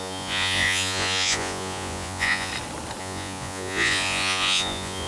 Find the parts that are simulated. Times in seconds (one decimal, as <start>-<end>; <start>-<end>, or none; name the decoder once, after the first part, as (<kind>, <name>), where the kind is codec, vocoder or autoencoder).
0.0-2.5 (vocoder, Vocos); 3.0-5.1